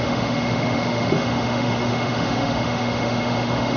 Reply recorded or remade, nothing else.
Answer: remade